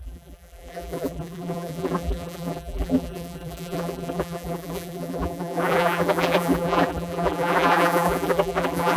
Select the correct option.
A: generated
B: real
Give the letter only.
A